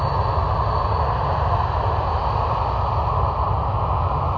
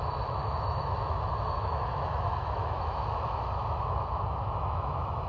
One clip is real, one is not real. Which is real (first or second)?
first